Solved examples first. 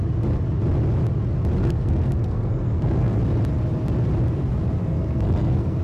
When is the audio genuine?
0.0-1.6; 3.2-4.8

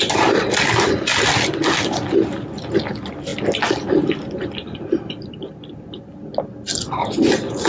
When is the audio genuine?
0.0-7.7

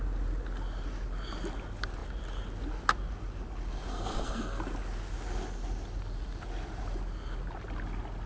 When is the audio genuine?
0.0-3.9; 4.6-8.3

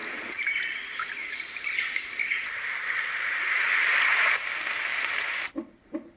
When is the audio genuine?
0.0-6.2

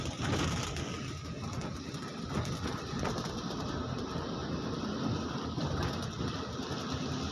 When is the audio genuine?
0.0-7.3

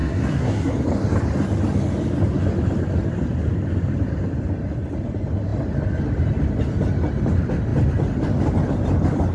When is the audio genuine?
0.7-9.3